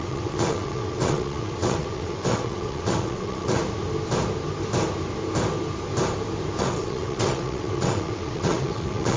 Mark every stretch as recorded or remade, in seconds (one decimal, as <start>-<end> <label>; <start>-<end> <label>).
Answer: 0.0-3.6 remade; 3.6-6.6 recorded; 6.6-9.2 remade